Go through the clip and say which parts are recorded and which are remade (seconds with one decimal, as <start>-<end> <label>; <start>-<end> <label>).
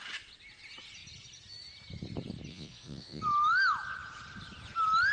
0.0-2.5 recorded; 2.5-3.2 remade; 3.2-5.1 recorded